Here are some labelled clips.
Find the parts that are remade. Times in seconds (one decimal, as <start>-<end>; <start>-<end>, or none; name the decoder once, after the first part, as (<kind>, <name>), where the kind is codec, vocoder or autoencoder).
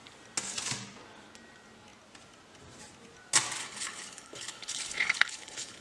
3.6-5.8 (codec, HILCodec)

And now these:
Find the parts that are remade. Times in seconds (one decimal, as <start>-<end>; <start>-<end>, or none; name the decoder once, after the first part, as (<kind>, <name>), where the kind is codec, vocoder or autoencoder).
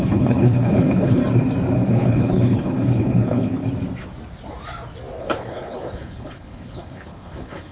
0.0-1.2 (codec, HILCodec); 1.9-3.6; 5.2-7.7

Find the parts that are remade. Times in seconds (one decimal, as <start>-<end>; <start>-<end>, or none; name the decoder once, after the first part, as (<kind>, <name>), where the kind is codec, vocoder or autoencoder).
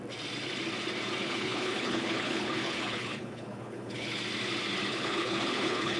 1.2-4.2 (codec, HILCodec); 4.9-6.0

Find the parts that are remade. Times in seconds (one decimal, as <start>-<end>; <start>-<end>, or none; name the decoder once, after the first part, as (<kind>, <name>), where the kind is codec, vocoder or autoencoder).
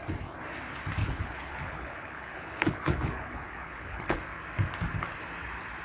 1.0-4.2 (codec, HILCodec)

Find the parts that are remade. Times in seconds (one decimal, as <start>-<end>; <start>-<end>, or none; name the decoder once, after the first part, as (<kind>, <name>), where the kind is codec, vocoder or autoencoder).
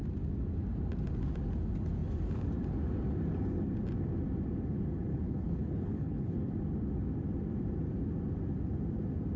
5.1-6.5 (codec, HILCodec)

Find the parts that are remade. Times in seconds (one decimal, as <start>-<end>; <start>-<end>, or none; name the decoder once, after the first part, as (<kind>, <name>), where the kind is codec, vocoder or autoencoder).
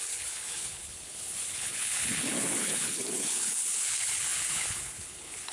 0.0-5.5 (codec, HILCodec)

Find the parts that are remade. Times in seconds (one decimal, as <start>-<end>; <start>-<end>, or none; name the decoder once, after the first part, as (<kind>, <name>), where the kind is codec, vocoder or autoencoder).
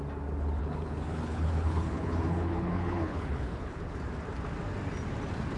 0.6-3.8 (codec, HILCodec)